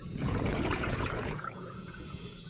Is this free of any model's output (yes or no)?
no